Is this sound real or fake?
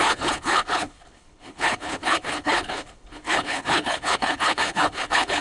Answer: fake